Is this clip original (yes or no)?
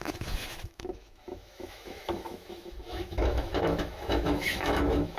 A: no